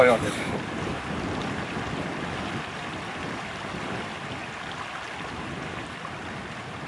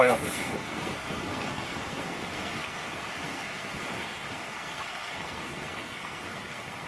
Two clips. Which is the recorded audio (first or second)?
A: first